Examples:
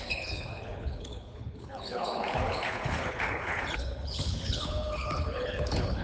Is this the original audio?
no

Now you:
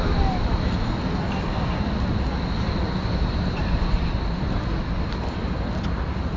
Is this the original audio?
yes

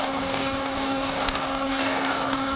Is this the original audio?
no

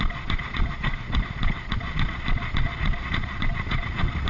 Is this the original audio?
no